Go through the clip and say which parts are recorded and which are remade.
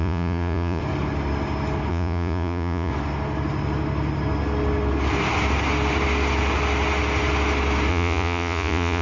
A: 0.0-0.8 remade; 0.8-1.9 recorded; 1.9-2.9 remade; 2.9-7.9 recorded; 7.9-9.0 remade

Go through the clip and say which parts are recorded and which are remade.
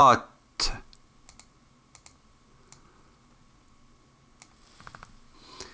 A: 0.0-5.7 recorded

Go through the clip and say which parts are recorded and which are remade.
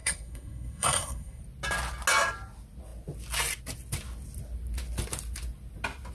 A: 0.0-1.4 remade; 1.4-6.1 recorded